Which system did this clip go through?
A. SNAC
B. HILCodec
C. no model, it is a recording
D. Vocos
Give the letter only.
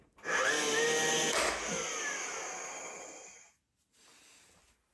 C